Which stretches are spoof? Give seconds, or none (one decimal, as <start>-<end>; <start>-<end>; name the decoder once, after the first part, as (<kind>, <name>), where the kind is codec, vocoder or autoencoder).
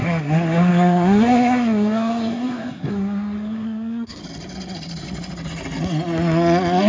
0.0-4.2 (codec, SNAC)